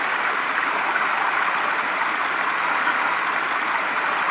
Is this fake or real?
real